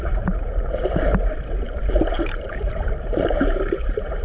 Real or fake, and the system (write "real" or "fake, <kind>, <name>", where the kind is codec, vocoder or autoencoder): fake, vocoder, BigVGAN v2